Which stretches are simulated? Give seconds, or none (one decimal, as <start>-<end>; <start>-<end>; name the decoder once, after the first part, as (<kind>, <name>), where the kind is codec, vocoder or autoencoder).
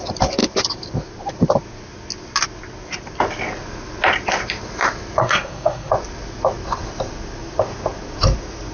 5.2-5.9 (codec, SNAC)